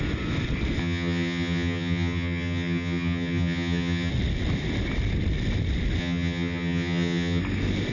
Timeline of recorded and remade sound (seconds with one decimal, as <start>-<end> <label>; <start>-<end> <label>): 0.0-0.8 recorded; 0.8-4.1 remade; 4.1-6.0 recorded; 6.0-7.4 remade; 7.4-7.9 recorded